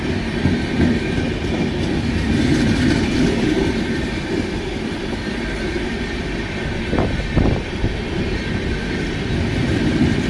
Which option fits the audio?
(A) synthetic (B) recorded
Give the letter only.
A